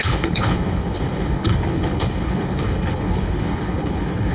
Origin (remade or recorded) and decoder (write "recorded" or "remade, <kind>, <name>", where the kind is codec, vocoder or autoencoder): remade, codec, HILCodec